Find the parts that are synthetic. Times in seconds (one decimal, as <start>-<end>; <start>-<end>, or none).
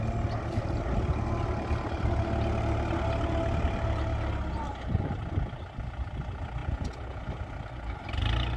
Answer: 6.6-7.2